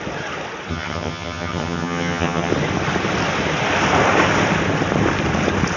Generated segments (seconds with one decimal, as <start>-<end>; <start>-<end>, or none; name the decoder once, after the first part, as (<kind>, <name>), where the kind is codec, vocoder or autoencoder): 0.7-2.5 (vocoder, HiFi-GAN)